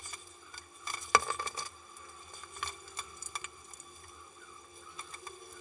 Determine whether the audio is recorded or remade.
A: recorded